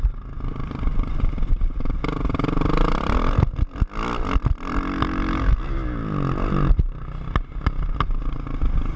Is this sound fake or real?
real